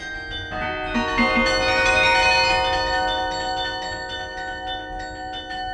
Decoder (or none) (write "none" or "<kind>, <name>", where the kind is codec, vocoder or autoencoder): none